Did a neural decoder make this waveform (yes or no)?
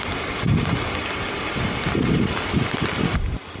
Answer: no